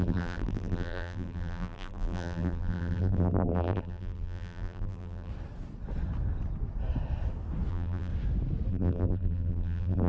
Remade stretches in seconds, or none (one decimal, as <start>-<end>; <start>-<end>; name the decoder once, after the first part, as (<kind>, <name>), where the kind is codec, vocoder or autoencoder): 0.0-5.3 (vocoder, BigVGAN v2); 7.7-8.1; 8.7-10.1